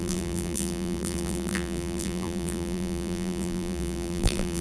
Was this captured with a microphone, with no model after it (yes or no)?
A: no